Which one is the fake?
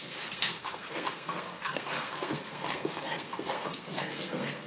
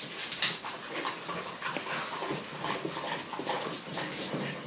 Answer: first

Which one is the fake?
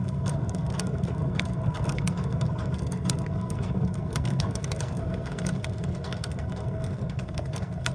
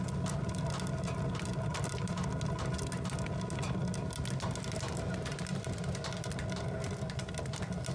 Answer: first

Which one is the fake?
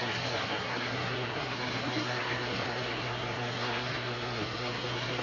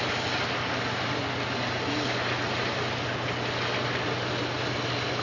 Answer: first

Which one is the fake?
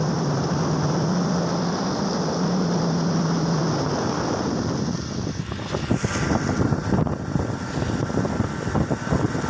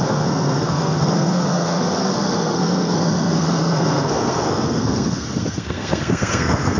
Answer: second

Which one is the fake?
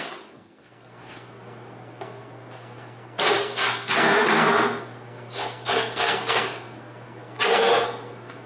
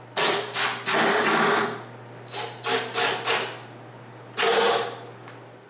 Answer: first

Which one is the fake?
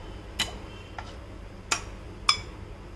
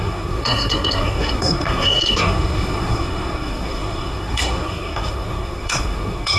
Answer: second